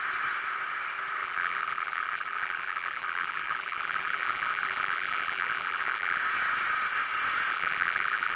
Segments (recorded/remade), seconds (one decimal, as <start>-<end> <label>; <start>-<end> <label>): 0.0-1.2 recorded; 1.2-6.2 remade; 6.2-7.5 recorded; 7.5-8.4 remade